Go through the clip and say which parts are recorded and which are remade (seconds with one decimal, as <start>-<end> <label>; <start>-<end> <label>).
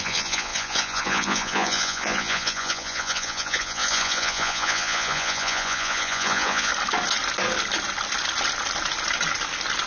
0.0-6.7 remade; 6.7-9.9 recorded